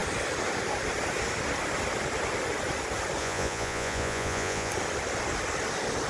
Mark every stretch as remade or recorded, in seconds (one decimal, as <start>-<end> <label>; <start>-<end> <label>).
0.0-3.2 recorded; 3.2-4.7 remade; 4.7-6.1 recorded